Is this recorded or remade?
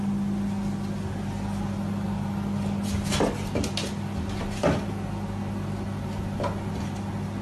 recorded